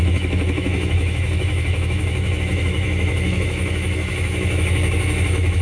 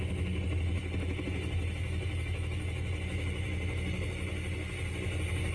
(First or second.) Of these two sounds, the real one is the second